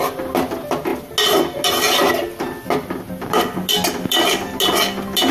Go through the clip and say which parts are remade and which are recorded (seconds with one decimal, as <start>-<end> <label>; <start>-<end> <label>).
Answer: 0.0-5.3 recorded